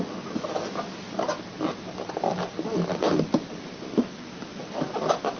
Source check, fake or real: real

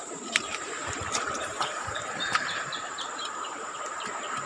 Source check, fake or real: fake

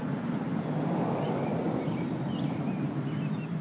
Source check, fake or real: real